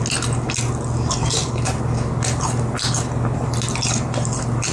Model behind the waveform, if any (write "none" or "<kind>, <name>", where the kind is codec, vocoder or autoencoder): none